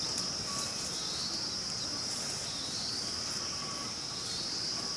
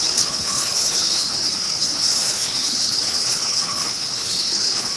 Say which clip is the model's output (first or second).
second